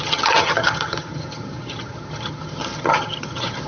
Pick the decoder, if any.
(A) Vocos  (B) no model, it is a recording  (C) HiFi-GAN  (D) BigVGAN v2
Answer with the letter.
C